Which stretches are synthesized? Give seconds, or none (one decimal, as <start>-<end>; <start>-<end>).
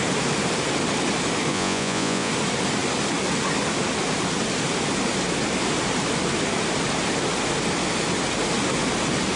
1.5-2.3